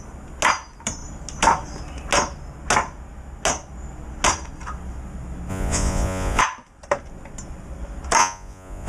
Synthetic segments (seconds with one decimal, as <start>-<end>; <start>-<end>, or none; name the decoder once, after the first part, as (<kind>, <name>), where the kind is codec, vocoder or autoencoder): 5.5-6.4 (vocoder, Vocos); 8.2-8.9